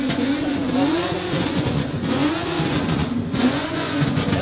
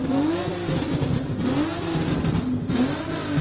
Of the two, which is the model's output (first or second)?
first